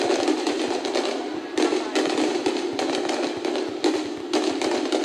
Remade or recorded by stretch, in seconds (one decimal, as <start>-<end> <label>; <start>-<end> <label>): 0.0-5.0 recorded